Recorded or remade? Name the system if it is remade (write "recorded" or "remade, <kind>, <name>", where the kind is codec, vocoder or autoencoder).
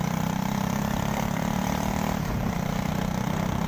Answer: remade, vocoder, BigVGAN v2